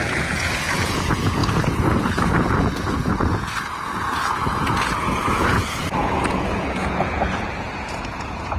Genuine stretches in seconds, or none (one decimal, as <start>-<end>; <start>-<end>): none